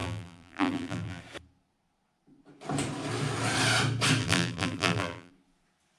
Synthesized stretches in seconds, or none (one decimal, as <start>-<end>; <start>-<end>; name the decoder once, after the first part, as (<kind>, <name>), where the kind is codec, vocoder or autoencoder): 0.0-1.2 (vocoder, BigVGAN v2); 4.2-5.3